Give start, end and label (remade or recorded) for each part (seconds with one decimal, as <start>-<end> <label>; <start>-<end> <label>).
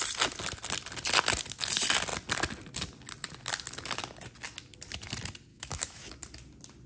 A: 0.0-5.5 recorded; 5.5-6.1 remade; 6.1-6.9 recorded